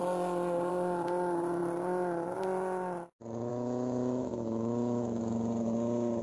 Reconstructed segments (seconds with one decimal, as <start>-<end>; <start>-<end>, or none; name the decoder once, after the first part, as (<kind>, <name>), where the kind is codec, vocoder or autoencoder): 3.5-5.2 (autoencoder, DAC-VAE)